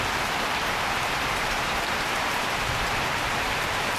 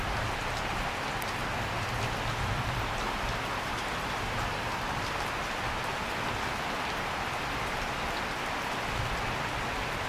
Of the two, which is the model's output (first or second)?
first